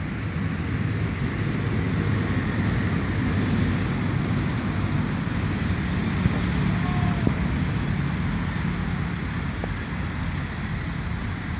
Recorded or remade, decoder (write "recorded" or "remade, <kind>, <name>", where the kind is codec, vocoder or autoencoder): recorded